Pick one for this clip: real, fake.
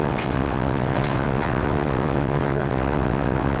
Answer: fake